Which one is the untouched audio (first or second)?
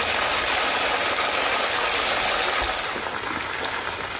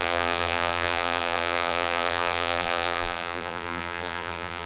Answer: first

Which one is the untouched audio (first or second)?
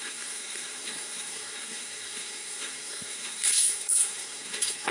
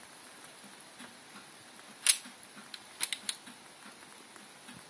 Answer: second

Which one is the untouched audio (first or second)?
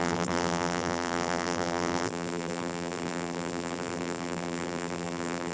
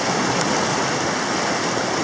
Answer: second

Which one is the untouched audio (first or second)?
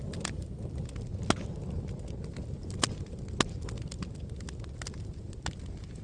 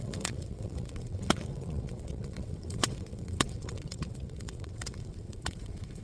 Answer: first